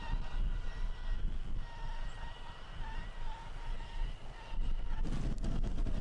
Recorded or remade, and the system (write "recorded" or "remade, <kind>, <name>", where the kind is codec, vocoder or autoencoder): recorded